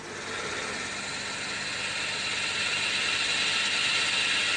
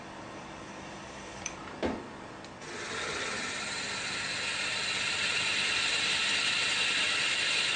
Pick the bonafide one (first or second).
first